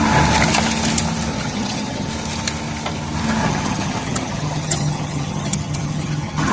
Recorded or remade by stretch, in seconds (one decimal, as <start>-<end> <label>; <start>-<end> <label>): 0.0-1.3 recorded; 1.3-2.1 remade; 2.1-3.4 recorded; 3.4-6.5 remade